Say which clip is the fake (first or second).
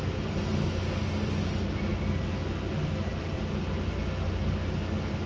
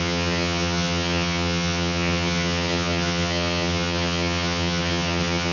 second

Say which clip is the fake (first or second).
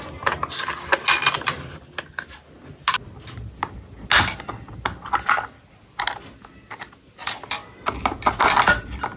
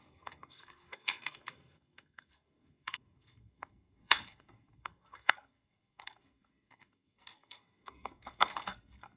second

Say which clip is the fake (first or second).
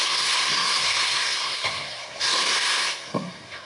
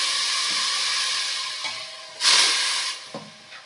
first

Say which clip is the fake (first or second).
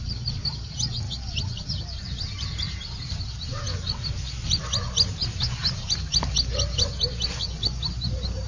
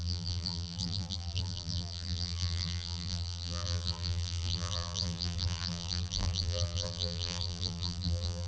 second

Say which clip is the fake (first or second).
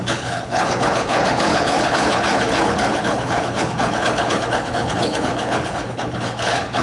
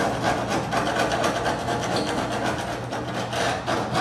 first